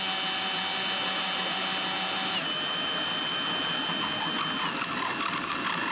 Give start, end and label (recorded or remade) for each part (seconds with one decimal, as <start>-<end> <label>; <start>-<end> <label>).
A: 0.0-5.9 recorded